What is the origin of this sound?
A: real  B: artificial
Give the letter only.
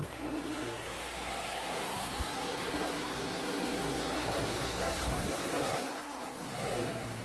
B